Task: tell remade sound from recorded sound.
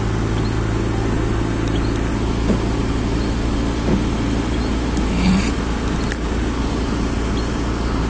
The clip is recorded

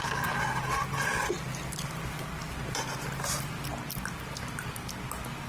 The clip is recorded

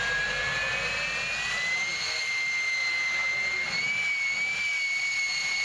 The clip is recorded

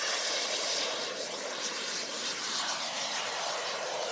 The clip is remade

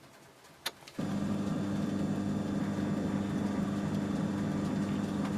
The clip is recorded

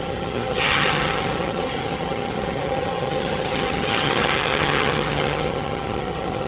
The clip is remade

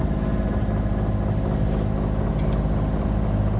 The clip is recorded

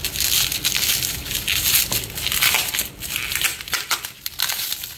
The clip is recorded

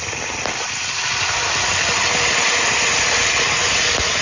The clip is recorded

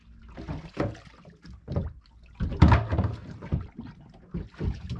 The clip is recorded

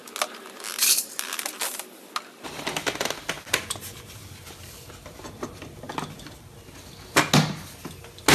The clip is recorded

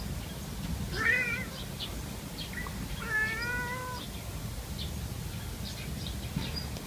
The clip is recorded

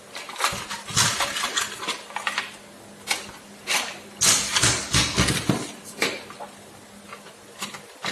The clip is recorded